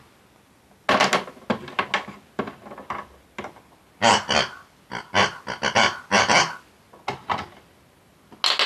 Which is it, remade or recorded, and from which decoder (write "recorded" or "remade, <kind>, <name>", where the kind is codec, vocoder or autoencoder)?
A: recorded